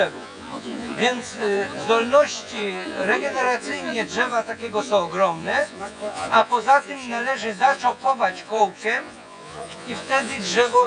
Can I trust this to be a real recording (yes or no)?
no